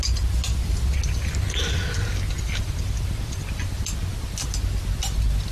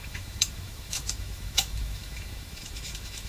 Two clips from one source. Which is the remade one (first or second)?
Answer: second